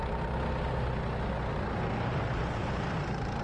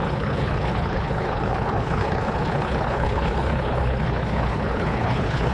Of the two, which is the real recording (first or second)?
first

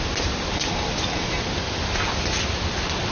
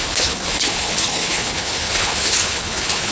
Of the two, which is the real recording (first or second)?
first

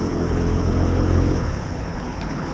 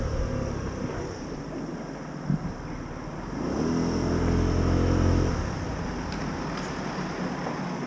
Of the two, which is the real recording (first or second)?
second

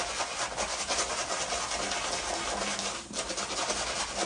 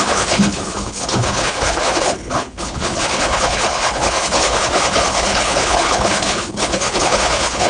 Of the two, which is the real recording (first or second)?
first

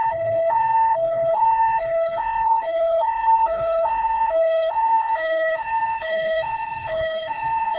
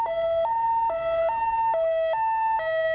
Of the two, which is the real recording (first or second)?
second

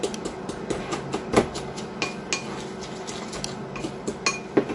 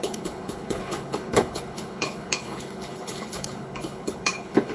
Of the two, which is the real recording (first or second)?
first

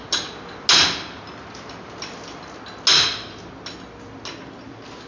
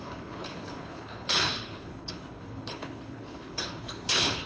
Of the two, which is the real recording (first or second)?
first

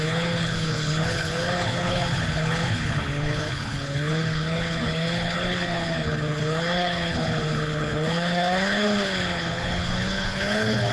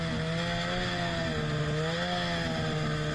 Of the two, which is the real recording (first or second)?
second